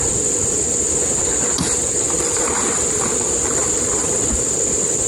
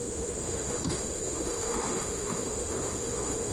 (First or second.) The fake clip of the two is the second